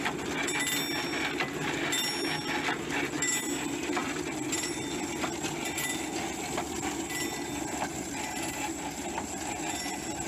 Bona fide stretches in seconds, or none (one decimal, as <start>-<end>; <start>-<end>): 0.0-4.0; 4.7-7.9; 9.8-10.3